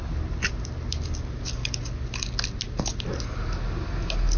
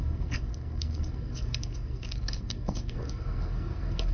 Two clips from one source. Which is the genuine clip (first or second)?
first